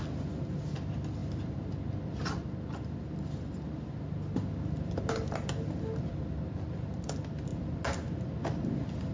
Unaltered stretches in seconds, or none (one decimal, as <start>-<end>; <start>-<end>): 0.0-9.1